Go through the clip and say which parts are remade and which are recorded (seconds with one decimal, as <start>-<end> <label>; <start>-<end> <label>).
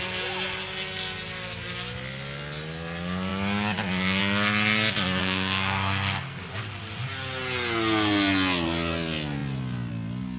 0.0-5.2 recorded; 5.2-6.4 remade; 6.4-10.4 recorded